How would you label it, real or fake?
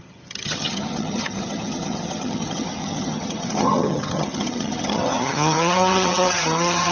fake